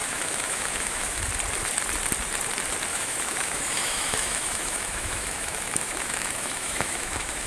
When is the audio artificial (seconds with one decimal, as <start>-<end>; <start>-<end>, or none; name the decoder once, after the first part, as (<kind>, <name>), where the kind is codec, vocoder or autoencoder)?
0.0-1.2 (autoencoder, DAC-VAE); 2.9-7.5